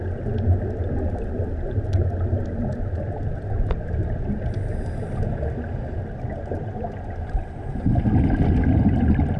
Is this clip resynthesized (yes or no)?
no